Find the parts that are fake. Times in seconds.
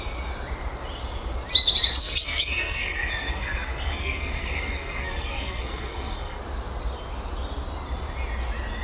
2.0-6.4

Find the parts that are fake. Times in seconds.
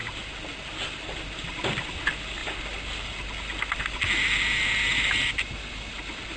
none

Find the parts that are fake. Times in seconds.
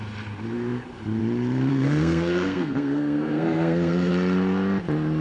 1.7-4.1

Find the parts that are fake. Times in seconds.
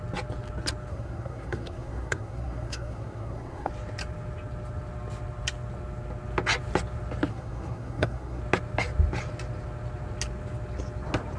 0.9-3.7; 7.3-8.4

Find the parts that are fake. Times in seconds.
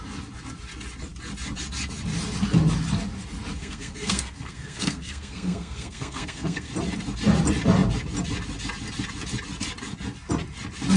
3.6-6.7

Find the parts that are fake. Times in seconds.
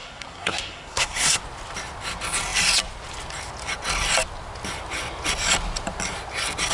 0.0-1.4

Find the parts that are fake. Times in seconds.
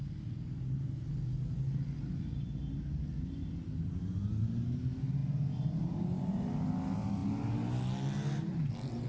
none